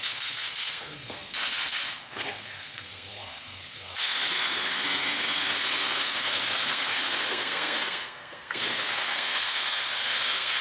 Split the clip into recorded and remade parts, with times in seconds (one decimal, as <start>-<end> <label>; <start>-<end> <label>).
0.0-10.6 remade